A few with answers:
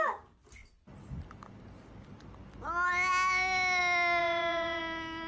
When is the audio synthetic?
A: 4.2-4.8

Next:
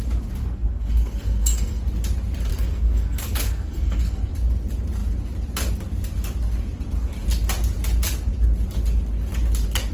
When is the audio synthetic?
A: 0.4-1.8; 2.5-4.3

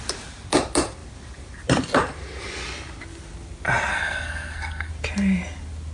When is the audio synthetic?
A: 3.9-4.9

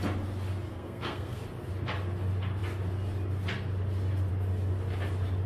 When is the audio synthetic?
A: 0.7-1.4